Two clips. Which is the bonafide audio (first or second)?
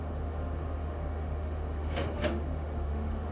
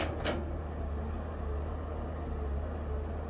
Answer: second